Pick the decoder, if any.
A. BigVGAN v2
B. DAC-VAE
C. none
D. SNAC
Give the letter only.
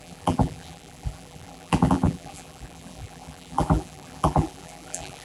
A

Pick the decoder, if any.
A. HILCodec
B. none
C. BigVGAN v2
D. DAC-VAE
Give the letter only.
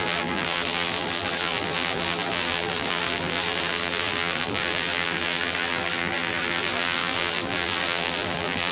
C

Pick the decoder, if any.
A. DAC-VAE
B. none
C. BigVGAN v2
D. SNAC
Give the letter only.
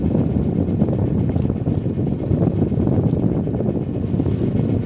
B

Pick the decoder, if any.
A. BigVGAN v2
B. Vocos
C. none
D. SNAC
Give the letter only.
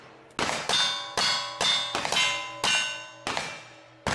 C